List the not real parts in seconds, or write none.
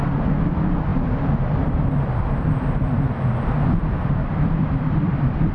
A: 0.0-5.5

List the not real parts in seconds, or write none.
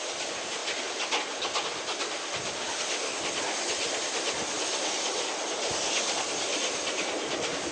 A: none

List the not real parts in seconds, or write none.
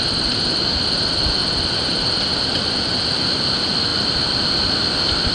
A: 3.9-5.3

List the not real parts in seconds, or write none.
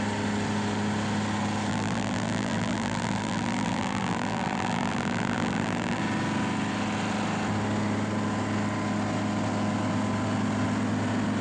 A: 1.7-6.0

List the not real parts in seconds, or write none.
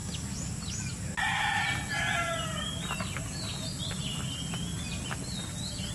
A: none